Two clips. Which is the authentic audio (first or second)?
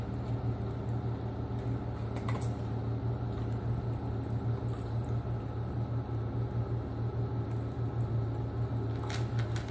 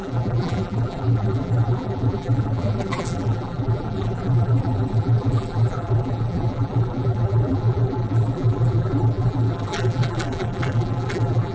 first